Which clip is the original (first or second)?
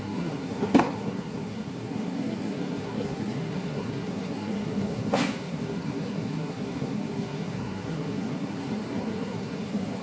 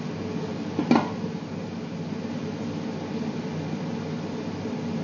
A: second